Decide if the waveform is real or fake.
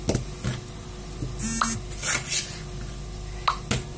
real